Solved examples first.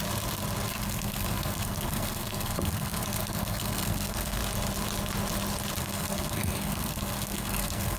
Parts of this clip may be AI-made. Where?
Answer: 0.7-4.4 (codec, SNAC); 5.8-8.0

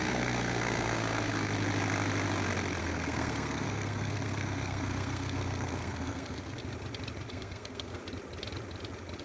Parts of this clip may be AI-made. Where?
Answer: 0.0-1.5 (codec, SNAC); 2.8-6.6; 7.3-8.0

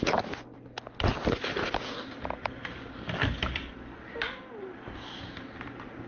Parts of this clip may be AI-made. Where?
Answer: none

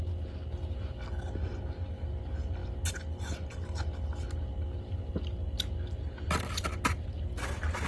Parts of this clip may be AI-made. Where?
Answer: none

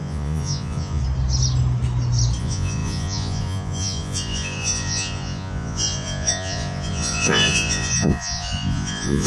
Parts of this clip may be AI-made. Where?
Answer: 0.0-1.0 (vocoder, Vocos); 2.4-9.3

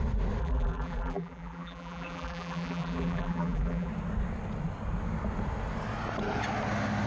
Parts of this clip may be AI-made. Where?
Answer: 0.4-3.9 (vocoder, BigVGAN v2)